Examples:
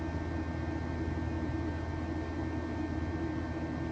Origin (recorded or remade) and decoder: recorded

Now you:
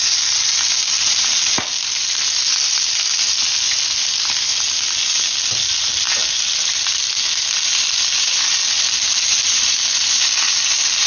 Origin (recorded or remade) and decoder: recorded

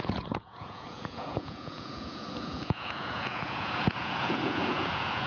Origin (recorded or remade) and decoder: remade, vocoder, Vocos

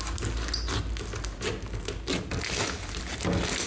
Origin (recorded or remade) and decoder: recorded